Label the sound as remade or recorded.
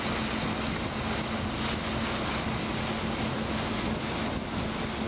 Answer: recorded